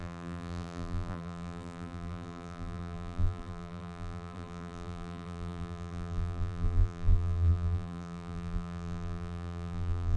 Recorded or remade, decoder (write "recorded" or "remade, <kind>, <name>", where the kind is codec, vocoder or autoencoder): remade, vocoder, BigVGAN v2